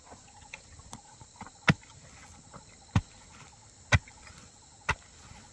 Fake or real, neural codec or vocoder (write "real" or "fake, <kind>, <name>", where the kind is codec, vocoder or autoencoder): real